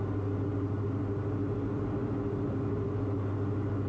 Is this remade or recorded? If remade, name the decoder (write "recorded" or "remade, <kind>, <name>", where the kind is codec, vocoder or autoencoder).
recorded